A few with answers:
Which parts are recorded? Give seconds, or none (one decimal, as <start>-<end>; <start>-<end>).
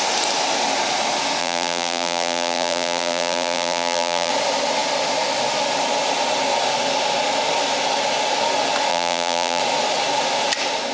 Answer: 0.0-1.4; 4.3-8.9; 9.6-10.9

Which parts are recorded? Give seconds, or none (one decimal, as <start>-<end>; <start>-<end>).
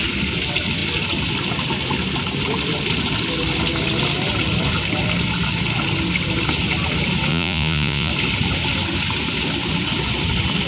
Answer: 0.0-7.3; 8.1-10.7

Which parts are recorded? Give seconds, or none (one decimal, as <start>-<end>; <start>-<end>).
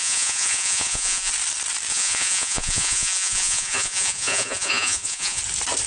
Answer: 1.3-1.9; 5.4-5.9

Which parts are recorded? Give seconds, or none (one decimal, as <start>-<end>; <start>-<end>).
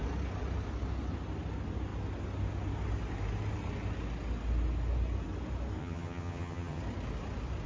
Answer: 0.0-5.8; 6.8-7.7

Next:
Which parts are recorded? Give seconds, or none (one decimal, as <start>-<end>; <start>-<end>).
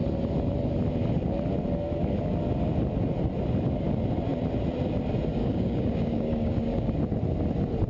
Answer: 0.0-5.4; 6.9-7.9